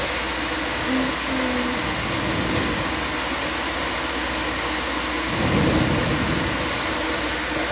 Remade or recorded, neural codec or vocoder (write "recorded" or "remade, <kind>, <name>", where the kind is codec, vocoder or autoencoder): recorded